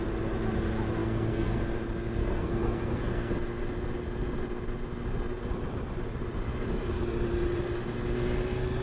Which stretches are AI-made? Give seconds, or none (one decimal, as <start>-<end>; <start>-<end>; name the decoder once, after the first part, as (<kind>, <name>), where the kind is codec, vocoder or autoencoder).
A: 1.0-1.6 (codec, SNAC); 2.2-3.3